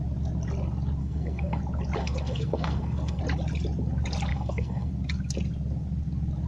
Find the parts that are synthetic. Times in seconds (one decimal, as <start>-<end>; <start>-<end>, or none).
1.0-1.6; 2.0-3.2; 4.3-4.9